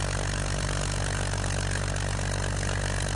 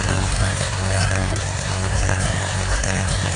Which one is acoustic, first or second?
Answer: first